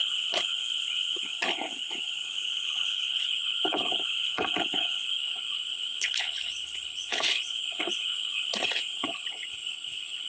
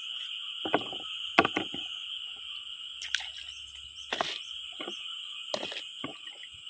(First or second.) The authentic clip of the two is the second